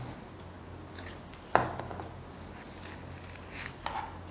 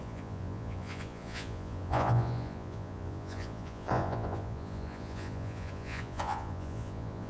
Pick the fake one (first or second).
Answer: second